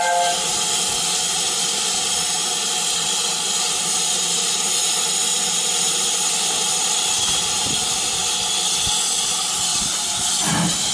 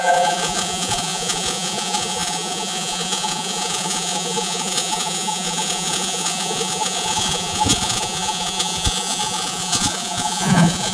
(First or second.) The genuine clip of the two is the first